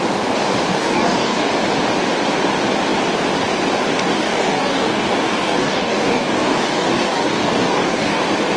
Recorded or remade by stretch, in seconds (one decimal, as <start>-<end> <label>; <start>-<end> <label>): 0.0-0.7 recorded; 0.7-1.5 remade; 1.5-4.1 recorded; 4.1-8.2 remade; 8.2-8.6 recorded